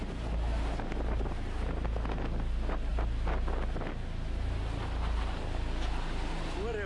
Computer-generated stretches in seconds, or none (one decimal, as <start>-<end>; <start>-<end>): none